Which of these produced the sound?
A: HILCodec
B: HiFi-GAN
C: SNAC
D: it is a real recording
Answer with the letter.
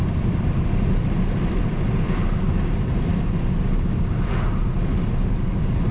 D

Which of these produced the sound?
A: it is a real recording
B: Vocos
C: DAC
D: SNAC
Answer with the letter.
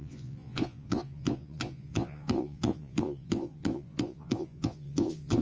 B